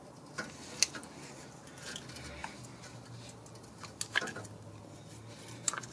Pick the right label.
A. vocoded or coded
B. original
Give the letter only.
B